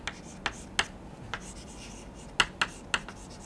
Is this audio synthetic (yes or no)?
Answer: no